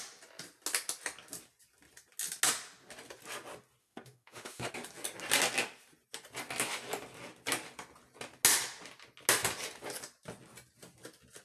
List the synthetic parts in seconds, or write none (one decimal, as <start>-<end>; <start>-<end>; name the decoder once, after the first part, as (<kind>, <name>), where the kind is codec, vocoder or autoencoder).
3.8-4.7 (autoencoder, DAC-VAE)